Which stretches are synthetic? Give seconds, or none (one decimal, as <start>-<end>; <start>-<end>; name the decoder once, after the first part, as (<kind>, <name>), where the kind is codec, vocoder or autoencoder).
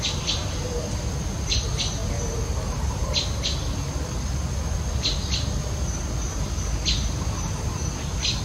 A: none